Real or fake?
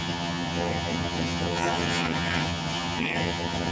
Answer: fake